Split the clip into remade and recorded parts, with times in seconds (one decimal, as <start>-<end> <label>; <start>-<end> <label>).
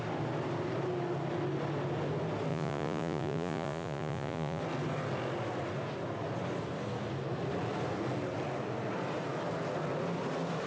0.0-2.5 recorded; 2.5-4.6 remade; 4.6-10.7 recorded